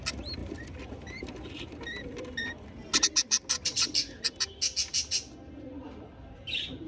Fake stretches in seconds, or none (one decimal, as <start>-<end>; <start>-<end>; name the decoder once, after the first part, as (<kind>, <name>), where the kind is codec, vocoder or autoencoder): none